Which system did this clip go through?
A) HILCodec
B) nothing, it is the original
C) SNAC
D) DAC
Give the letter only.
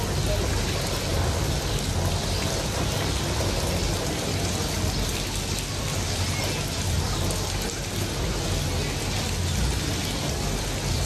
B